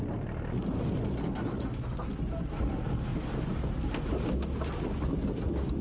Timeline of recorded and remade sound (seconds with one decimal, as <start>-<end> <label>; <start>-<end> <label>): 0.0-5.8 recorded